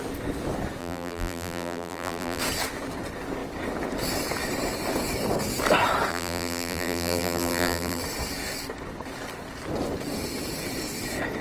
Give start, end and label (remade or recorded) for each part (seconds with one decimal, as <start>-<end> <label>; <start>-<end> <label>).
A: 0.0-0.8 recorded; 0.8-2.4 remade; 2.4-6.1 recorded; 6.1-8.0 remade; 8.0-11.4 recorded